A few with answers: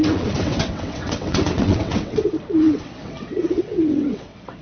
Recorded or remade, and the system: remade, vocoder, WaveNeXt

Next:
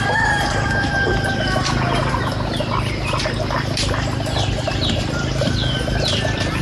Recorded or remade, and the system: remade, vocoder, BigVGAN v2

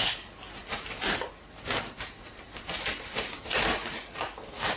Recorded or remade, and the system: recorded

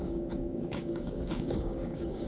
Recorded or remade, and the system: remade, codec, DAC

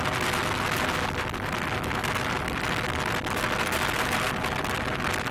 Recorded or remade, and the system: recorded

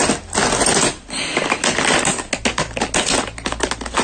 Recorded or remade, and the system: recorded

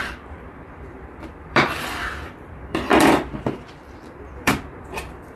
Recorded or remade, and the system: remade, vocoder, BigVGAN v2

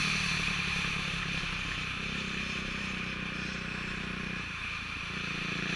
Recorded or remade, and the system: remade, vocoder, BigVGAN v2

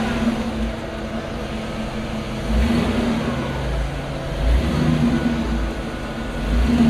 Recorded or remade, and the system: recorded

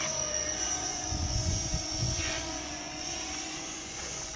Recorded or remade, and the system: remade, vocoder, Vocos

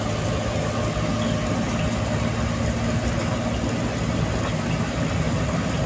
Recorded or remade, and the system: recorded